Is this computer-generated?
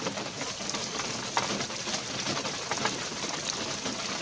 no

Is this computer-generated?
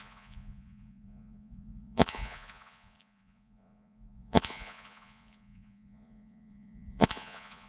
yes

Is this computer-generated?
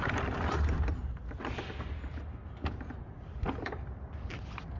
no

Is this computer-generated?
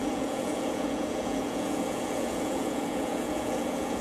yes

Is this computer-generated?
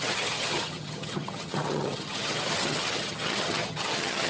yes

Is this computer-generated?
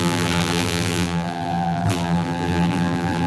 yes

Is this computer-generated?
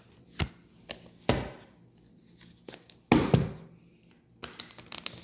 no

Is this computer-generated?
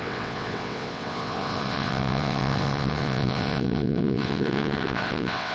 yes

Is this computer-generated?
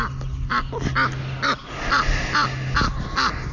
no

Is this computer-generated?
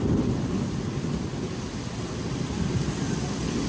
yes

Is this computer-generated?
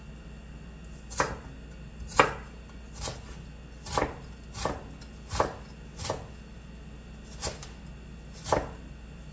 no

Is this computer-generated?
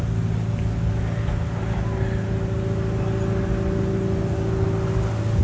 no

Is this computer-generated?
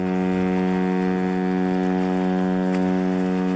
no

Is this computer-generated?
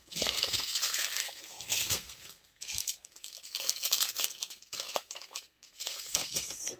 yes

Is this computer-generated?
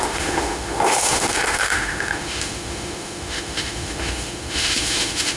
yes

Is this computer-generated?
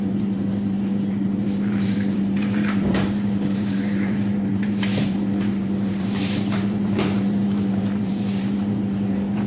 yes